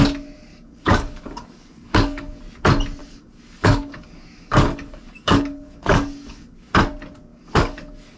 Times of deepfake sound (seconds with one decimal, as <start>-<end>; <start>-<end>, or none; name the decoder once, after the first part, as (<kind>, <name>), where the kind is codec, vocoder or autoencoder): 0.5-2.4 (codec, DAC); 3.0-6.7; 7.3-8.2